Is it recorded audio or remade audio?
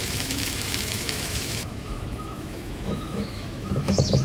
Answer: remade